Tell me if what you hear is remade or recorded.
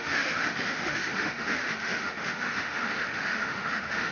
remade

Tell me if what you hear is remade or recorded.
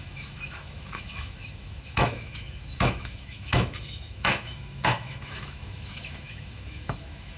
remade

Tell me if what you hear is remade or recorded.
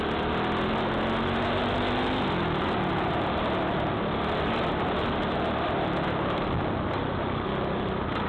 recorded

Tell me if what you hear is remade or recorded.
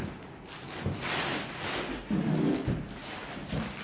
recorded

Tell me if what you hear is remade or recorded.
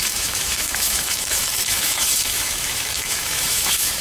remade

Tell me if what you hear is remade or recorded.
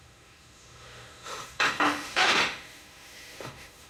remade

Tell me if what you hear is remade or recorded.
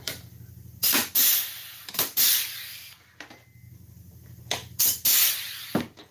recorded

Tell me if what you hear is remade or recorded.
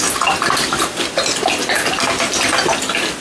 recorded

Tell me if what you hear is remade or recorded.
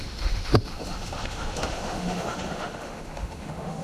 remade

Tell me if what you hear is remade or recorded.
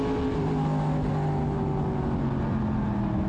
recorded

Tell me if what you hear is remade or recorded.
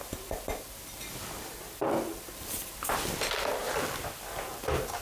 recorded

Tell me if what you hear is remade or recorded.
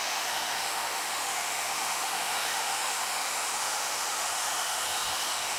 remade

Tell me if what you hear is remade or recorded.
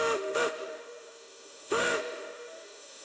remade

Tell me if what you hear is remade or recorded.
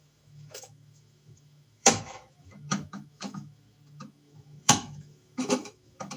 remade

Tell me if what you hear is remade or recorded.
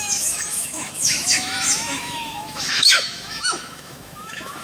remade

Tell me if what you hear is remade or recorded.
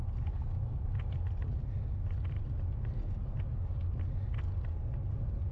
recorded